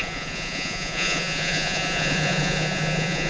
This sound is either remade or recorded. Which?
remade